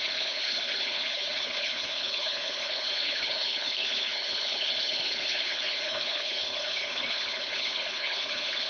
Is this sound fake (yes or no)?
yes